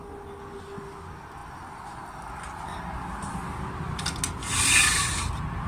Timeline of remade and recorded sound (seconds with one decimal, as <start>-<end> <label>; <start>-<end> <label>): 0.0-5.7 recorded